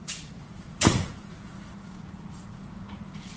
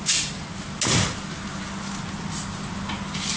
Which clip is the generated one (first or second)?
first